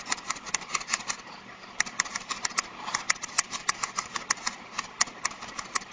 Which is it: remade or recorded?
recorded